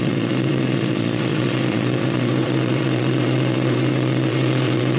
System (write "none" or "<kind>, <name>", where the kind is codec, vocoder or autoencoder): vocoder, Vocos